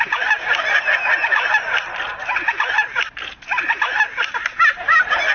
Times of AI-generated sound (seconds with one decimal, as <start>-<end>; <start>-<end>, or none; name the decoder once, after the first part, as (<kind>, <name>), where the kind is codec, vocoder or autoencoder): none